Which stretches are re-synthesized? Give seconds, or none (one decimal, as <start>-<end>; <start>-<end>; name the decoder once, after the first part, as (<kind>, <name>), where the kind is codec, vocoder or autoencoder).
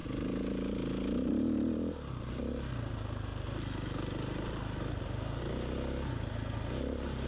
none